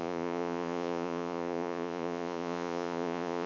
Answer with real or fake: fake